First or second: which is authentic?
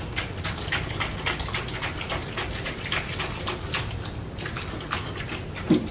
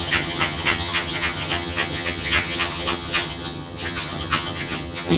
first